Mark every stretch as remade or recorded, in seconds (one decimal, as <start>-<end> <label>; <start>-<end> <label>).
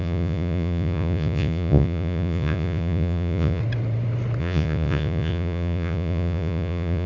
0.0-3.6 remade; 3.6-4.4 recorded; 4.4-7.1 remade